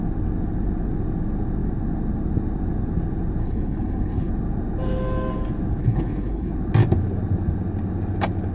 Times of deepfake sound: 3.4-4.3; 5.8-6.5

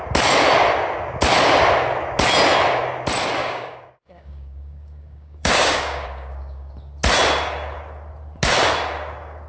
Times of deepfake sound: 3.4-6.7